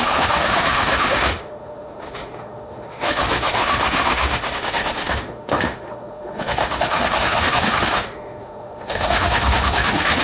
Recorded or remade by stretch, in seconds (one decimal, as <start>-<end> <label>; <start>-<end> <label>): 0.0-10.2 remade